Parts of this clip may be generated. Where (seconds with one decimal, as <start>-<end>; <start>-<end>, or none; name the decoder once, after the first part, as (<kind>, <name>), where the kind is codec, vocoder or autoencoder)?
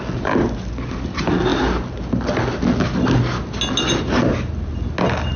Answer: none